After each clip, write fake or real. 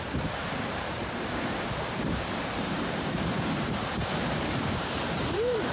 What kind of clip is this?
fake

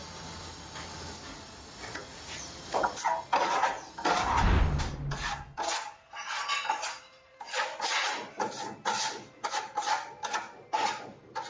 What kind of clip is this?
real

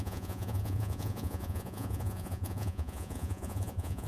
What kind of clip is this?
fake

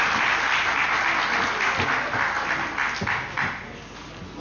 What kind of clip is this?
real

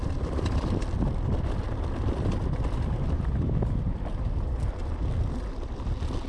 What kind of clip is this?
fake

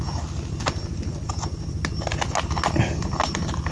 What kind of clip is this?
real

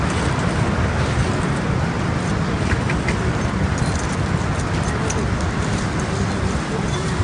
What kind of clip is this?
real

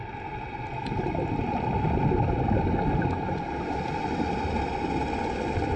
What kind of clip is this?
real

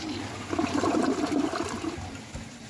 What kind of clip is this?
real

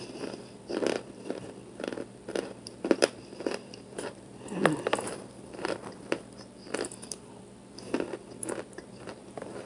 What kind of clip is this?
fake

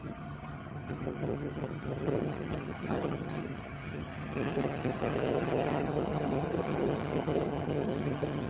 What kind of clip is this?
fake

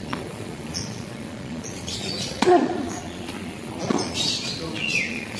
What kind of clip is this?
fake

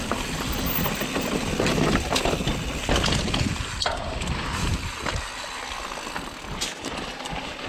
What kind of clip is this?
real